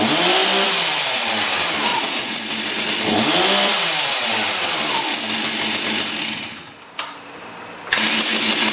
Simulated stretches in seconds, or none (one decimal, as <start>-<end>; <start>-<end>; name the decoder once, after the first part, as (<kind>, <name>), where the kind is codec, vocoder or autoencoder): 1.9-2.4 (vocoder, Vocos)

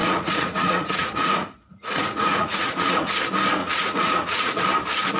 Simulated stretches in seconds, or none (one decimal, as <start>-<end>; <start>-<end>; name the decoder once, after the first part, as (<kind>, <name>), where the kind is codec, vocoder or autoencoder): 0.0-3.1 (vocoder, Vocos); 3.6-4.6

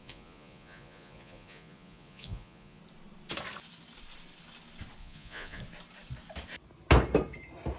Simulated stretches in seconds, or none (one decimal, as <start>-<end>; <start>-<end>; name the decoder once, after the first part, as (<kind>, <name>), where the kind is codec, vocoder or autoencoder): 0.0-2.8 (vocoder, Vocos); 5.0-5.6

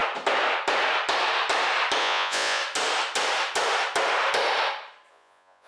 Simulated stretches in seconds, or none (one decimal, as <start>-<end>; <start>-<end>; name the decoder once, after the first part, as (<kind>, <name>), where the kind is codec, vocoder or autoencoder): 2.0-2.6 (vocoder, Vocos); 5.1-5.7

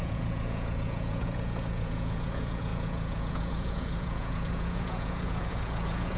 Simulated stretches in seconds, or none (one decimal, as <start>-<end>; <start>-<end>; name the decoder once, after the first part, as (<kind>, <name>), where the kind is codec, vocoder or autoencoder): 0.0-6.2 (vocoder, Vocos)

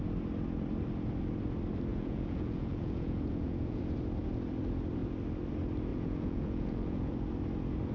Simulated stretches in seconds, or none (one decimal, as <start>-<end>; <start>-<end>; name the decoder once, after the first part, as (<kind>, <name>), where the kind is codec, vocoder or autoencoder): 1.9-3.8 (vocoder, Vocos); 5.9-7.1